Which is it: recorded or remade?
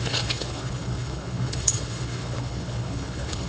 remade